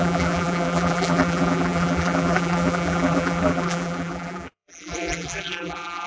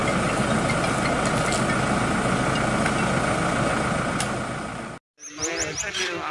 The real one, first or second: second